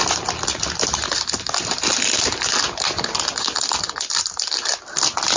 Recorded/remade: recorded